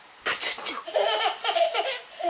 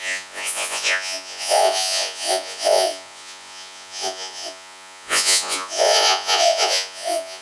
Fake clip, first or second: second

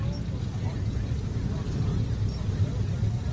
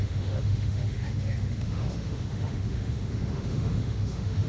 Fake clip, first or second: second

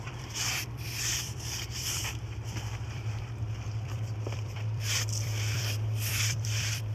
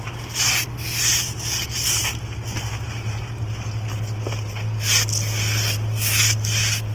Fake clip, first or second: first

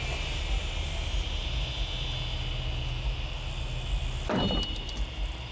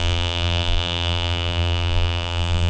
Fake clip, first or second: second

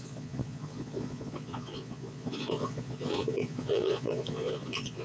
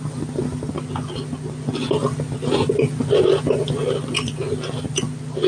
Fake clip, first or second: first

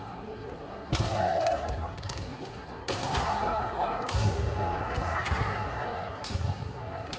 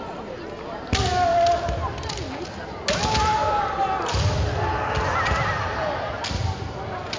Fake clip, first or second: first